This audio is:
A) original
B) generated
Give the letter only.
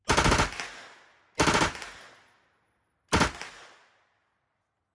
A